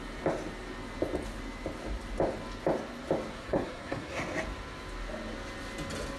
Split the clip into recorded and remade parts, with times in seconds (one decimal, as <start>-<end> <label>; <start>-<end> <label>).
0.0-3.3 recorded; 3.3-4.2 remade; 4.2-6.2 recorded